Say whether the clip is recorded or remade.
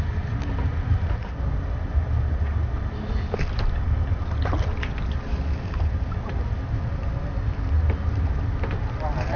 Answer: recorded